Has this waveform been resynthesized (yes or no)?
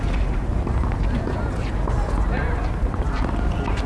no